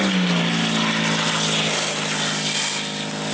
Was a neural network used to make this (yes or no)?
no